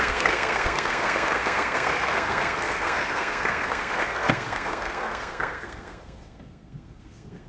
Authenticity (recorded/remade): remade